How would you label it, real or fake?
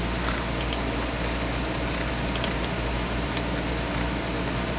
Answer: real